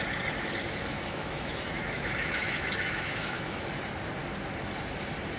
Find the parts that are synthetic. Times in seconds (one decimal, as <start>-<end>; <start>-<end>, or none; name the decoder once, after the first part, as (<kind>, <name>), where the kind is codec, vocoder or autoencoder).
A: 0.6-3.8 (autoencoder, DAC-VAE)